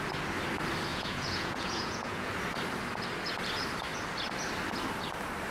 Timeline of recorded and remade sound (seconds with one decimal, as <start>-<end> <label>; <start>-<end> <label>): 0.0-0.9 recorded; 0.9-2.3 remade; 2.3-5.5 recorded